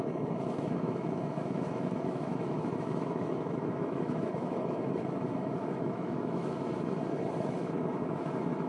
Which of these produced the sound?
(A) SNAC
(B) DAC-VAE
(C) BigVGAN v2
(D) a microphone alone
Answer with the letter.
B